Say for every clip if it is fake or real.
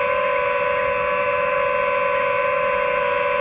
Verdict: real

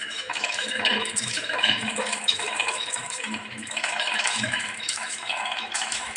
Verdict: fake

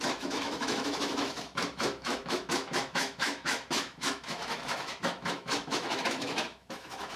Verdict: fake